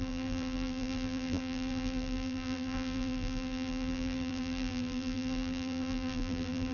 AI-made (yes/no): yes